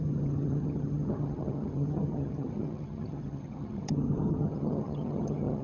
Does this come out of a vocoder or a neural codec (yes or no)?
yes